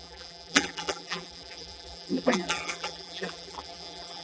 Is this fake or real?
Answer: fake